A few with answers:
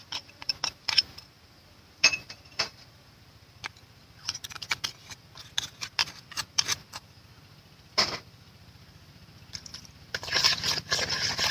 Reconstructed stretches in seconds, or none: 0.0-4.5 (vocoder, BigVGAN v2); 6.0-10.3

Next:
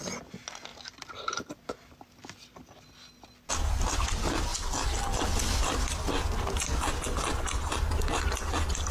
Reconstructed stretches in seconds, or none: 0.7-1.5 (vocoder, BigVGAN v2); 4.5-6.0

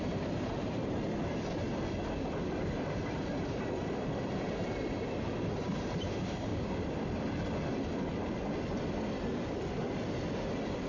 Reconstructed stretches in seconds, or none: 0.0-0.8 (vocoder, BigVGAN v2); 2.5-6.5

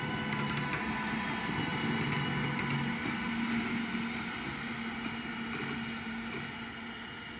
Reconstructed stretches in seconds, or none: none